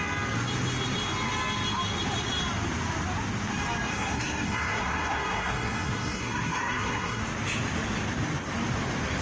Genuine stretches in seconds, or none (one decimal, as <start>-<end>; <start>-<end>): 0.0-3.9; 7.2-9.2